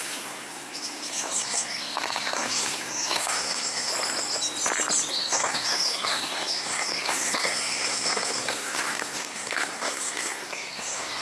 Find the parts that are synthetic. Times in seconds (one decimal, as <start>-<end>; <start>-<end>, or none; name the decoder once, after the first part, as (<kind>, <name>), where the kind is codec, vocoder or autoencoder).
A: 0.0-3.9 (codec, SNAC); 5.1-11.2